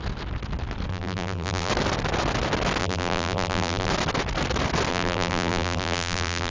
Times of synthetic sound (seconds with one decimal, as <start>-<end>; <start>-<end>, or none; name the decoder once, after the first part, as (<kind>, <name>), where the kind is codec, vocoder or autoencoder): 0.9-1.7 (vocoder, BigVGAN v2); 2.8-3.9; 4.9-6.5